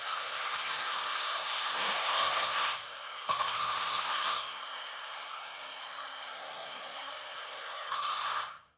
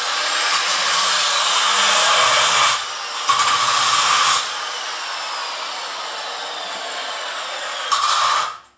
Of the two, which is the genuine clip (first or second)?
second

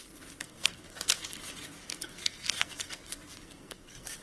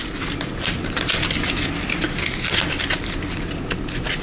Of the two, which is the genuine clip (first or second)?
second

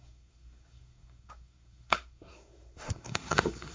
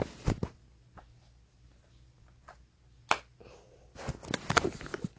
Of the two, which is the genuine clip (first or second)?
second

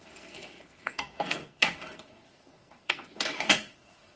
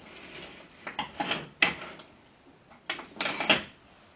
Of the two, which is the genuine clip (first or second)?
second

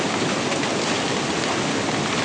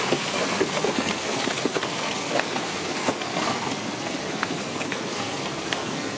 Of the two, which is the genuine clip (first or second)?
first